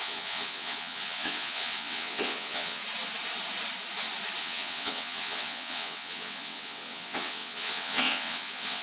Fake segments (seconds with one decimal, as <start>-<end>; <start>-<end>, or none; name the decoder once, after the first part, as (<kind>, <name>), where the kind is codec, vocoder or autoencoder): 0.0-2.8 (vocoder, WaveNeXt); 4.4-8.8